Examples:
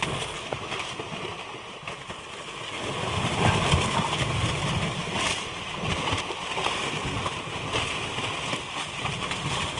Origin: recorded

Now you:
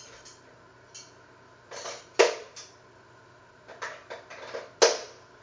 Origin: recorded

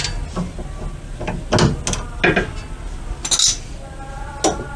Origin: recorded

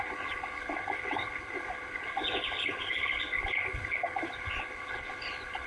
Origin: remade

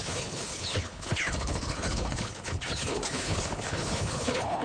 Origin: remade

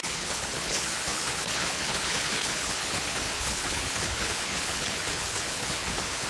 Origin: remade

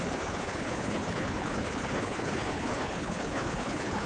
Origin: remade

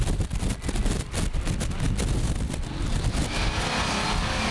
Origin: recorded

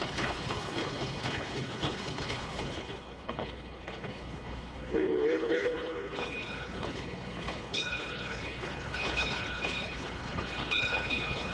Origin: remade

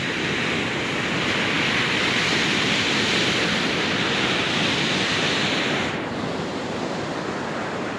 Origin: recorded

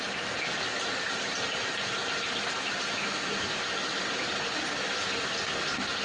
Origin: recorded